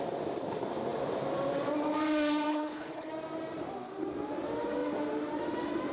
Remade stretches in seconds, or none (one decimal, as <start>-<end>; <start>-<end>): 2.5-3.1